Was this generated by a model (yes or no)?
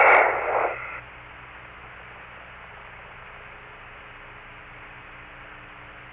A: no